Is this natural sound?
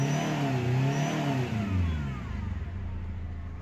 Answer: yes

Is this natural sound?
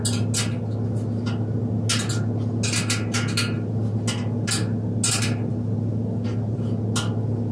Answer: yes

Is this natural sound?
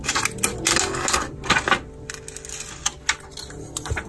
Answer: yes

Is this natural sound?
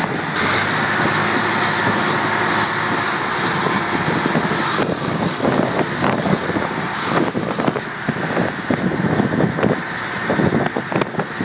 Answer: yes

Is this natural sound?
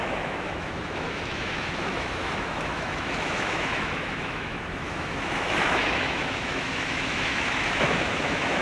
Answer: no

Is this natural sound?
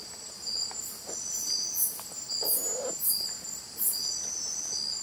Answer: yes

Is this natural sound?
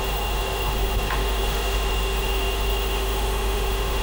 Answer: no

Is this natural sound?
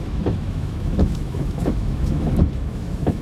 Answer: no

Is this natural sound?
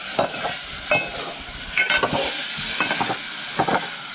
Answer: yes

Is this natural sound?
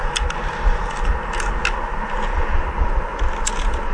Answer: yes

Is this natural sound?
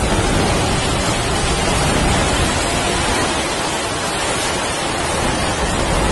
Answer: yes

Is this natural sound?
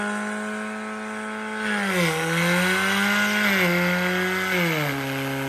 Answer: yes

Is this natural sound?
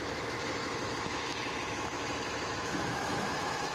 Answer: no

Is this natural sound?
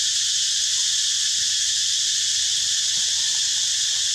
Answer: yes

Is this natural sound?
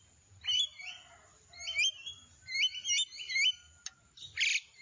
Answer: yes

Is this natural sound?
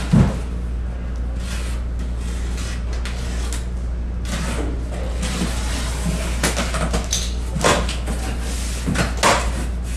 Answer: yes